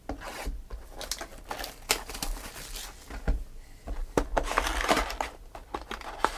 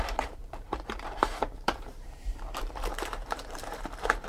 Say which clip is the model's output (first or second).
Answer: second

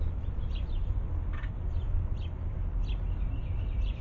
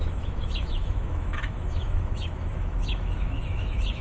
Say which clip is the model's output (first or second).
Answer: second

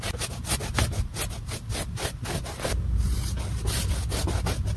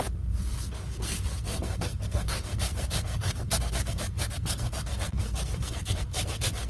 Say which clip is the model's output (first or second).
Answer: second